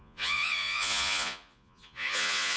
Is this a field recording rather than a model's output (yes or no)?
no